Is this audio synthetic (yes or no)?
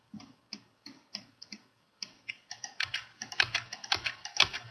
yes